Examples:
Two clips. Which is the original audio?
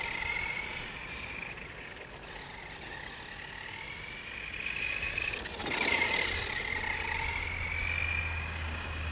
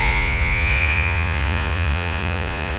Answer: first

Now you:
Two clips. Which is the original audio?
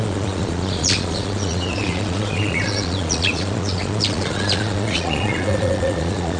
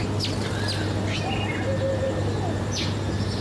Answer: second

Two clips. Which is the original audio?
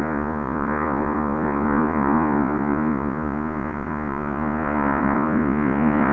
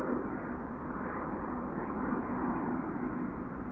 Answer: second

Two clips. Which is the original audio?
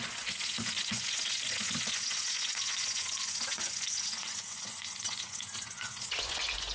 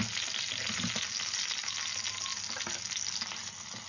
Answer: second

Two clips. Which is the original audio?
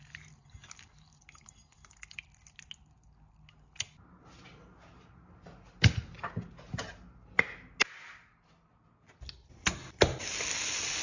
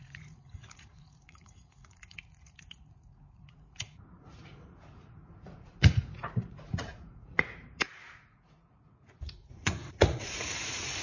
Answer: first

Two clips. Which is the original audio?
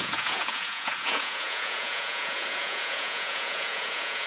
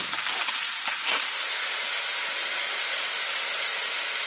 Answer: second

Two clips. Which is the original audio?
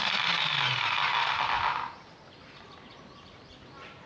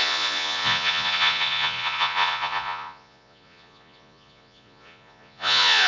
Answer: first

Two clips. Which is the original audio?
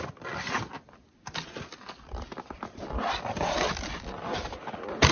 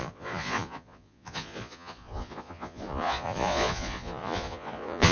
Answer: first